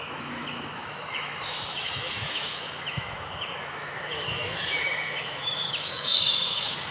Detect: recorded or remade remade